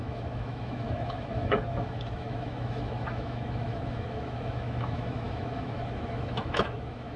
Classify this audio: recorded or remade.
remade